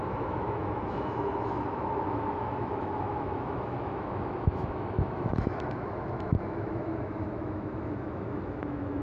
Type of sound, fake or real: fake